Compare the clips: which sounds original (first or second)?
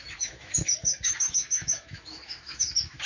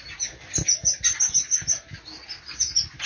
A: second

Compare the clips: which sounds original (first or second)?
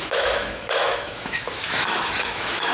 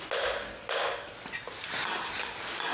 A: second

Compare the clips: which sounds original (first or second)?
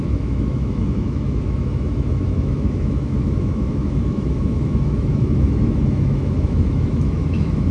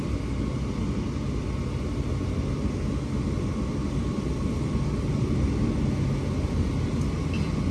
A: second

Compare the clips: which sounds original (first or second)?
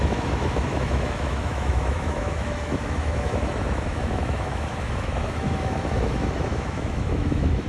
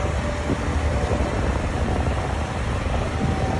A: second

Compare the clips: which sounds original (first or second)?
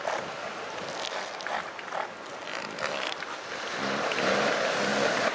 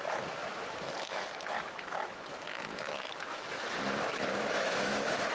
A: first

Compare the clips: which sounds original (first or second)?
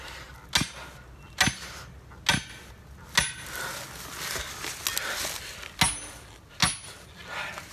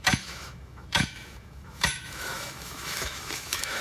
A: first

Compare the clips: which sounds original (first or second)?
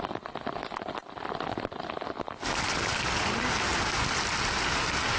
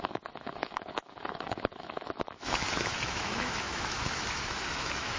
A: first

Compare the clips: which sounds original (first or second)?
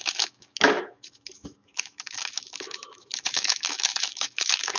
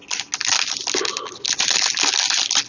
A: second